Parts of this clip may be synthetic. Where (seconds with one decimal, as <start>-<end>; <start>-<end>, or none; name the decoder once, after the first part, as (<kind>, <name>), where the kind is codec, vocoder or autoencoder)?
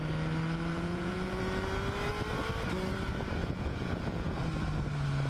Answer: 0.7-1.4 (vocoder, Vocos); 3.4-4.4